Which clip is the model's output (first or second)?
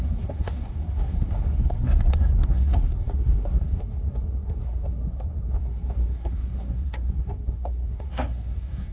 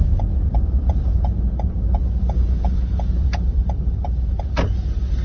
first